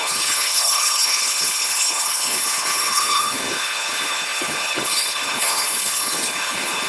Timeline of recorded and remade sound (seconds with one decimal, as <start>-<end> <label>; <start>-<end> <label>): 0.0-6.9 remade